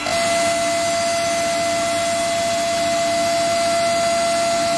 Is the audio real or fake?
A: real